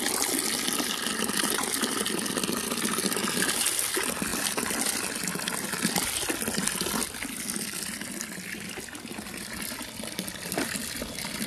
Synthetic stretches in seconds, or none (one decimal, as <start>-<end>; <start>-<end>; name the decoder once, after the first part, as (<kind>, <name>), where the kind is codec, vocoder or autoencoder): none